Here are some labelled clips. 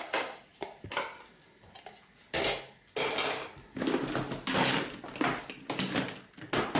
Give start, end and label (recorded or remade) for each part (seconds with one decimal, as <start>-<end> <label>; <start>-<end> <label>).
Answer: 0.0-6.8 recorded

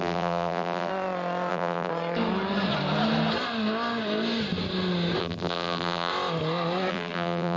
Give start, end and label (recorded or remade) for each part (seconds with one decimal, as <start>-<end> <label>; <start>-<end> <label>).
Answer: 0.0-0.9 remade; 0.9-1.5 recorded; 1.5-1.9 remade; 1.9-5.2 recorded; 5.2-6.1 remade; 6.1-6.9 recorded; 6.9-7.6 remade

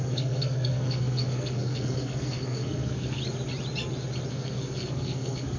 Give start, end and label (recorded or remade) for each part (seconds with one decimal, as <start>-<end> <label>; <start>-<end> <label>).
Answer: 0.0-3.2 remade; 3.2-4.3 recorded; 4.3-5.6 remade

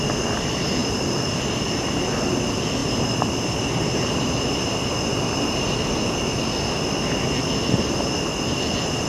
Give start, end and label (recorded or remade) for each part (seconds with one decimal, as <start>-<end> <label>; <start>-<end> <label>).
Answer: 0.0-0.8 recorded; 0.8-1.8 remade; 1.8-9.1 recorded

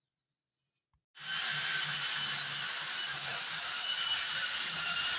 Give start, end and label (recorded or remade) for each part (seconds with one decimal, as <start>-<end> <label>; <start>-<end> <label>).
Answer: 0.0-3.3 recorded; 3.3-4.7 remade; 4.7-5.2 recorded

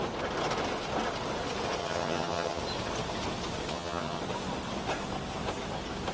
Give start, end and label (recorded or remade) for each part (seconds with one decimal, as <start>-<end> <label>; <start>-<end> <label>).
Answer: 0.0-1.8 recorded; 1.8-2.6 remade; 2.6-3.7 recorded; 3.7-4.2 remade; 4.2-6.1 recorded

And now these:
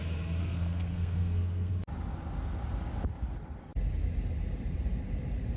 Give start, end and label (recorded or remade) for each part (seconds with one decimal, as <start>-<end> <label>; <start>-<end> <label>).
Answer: 0.0-0.4 recorded; 0.4-1.7 remade; 1.7-5.6 recorded